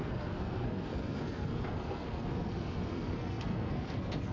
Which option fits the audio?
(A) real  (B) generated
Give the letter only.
B